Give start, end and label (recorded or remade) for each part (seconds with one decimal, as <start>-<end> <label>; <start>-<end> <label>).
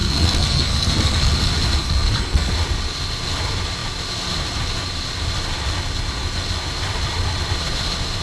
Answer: 0.0-1.3 remade; 1.3-1.8 recorded; 1.8-2.5 remade; 2.5-8.2 recorded